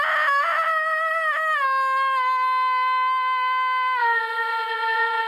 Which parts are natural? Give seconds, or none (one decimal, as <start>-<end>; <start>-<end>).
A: 0.0-4.0